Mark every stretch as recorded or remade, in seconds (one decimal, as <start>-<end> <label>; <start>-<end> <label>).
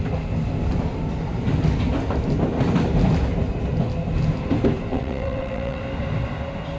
0.0-4.9 recorded; 4.9-5.8 remade; 5.8-6.8 recorded